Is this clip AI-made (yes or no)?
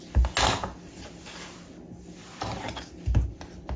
no